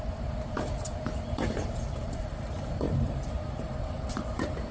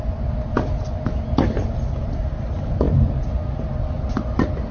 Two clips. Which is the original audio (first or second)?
second